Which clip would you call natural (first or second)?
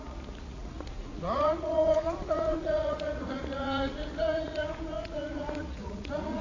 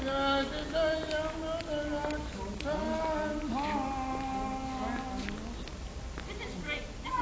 second